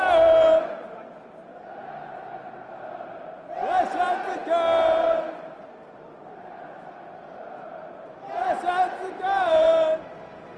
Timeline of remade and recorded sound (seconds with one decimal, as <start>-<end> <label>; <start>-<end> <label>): 0.0-1.5 recorded; 1.5-2.5 remade; 2.5-9.0 recorded; 9.0-10.6 remade